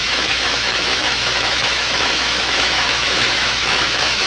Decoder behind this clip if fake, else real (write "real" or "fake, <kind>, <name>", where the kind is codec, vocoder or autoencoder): fake, autoencoder, DAC-VAE